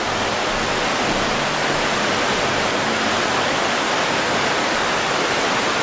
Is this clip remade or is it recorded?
recorded